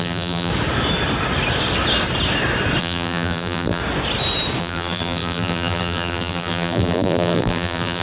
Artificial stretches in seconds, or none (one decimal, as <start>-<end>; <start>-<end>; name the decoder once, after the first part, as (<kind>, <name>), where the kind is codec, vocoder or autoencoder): 0.0-0.5 (vocoder, BigVGAN v2); 2.8-3.8; 4.6-8.0